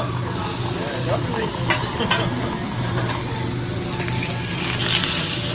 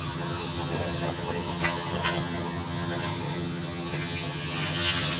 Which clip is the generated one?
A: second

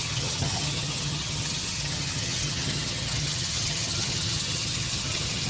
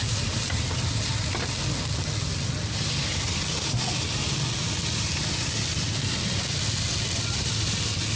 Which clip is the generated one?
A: first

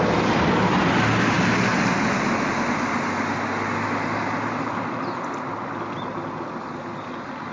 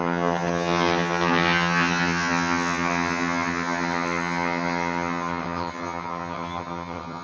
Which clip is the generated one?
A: second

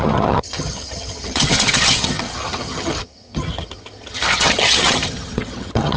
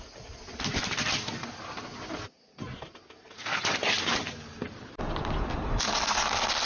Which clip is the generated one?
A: first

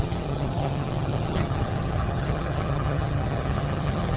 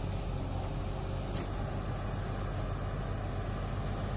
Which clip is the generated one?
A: first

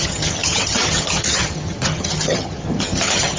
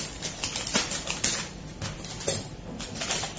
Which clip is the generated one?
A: first